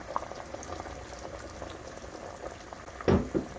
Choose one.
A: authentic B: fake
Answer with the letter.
A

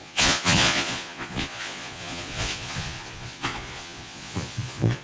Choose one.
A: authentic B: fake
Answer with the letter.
B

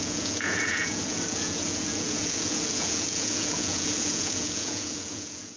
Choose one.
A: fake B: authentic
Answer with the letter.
A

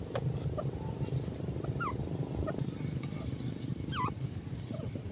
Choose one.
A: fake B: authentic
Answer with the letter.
A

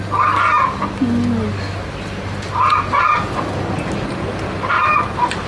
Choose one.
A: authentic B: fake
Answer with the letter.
A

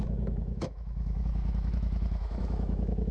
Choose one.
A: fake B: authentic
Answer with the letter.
A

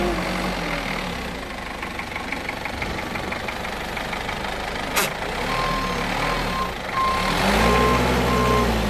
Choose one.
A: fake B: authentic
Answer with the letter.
B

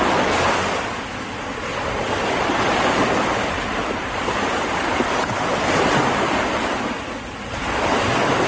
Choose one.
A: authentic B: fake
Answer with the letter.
A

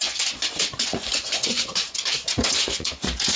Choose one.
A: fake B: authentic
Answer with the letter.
A